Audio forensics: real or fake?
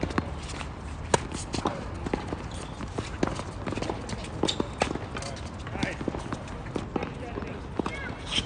real